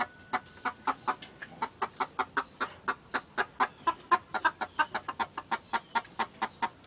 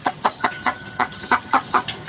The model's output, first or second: second